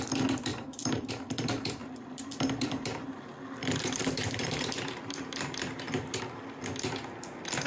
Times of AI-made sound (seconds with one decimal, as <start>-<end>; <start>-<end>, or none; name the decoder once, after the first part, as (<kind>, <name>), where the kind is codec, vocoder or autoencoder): 0.5-1.1 (vocoder, BigVGAN v2); 1.8-3.2; 3.6-6.2